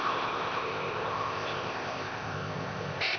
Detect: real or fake fake